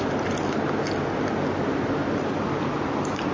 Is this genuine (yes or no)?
yes